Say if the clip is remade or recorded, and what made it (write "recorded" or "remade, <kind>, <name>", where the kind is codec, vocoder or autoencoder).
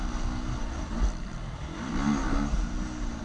recorded